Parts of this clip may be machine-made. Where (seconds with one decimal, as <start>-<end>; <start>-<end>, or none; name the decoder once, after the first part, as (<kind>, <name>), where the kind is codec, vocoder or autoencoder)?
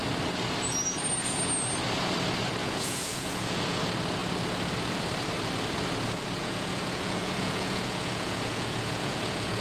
2.6-3.8 (vocoder, Vocos); 6.4-9.6